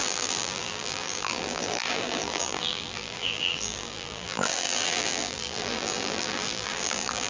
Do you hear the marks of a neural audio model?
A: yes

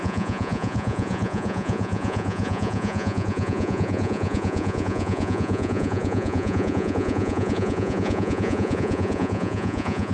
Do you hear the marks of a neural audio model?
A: yes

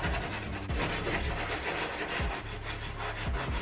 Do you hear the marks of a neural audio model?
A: no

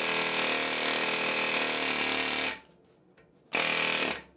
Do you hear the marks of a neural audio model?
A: no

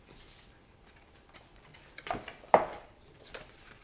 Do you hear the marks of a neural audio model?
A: no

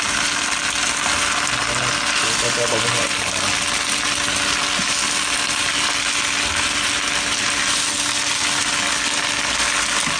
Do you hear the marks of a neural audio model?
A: no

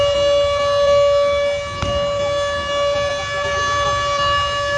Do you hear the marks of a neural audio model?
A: no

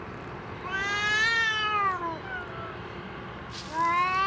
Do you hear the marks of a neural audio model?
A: no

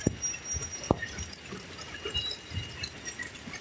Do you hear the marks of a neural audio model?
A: no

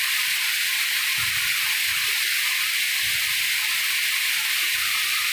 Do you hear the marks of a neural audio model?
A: no